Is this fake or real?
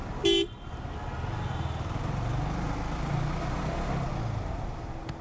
real